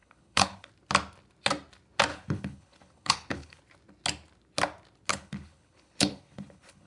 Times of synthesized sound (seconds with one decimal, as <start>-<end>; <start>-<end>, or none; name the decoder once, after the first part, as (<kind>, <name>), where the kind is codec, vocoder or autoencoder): 0.0-0.7 (codec, HILCodec); 2.1-3.6; 5.1-6.9